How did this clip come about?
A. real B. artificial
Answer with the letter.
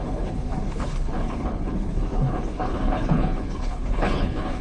B